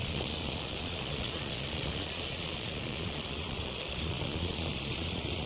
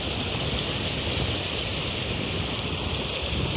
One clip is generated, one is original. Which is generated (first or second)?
first